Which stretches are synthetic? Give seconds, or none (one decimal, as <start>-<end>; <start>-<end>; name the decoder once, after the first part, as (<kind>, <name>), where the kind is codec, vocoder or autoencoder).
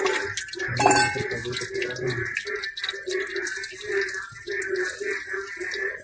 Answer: none